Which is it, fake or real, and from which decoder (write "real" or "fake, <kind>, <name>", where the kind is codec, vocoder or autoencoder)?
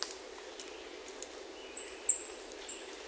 real